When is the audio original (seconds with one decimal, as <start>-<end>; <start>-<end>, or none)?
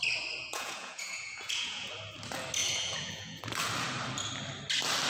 0.0-0.4; 1.9-2.6; 3.4-5.1